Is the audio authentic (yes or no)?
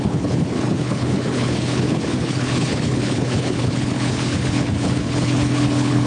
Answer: no